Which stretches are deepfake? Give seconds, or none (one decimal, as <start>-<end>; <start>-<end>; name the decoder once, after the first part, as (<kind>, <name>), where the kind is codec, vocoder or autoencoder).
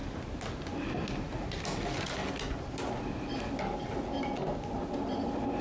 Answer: none